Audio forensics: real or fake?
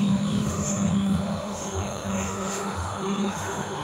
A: fake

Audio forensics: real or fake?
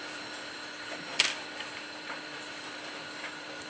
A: fake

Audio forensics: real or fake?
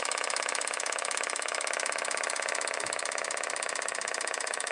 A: fake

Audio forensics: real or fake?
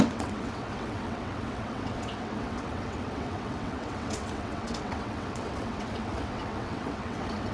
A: fake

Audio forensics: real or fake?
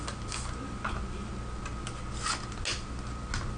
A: real